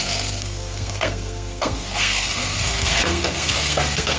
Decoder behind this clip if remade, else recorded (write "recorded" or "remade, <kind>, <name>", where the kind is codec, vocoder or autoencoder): remade, codec, SNAC